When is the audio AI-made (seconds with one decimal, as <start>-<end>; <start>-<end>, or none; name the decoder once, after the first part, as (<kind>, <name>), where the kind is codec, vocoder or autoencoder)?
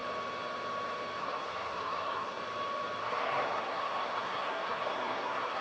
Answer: 1.2-2.4 (codec, SNAC); 3.0-5.6